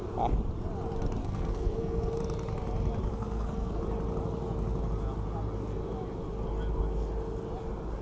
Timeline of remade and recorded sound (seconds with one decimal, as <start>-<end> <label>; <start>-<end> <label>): 0.0-1.2 recorded; 1.2-2.2 remade; 2.2-3.1 recorded; 3.1-3.8 remade; 3.8-8.0 recorded